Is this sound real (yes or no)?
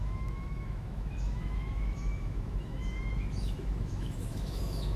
no